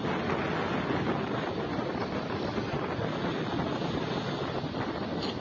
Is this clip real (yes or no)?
yes